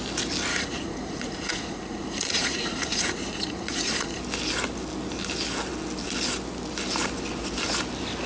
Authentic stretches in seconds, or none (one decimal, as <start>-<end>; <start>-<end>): 0.0-0.5; 4.2-8.3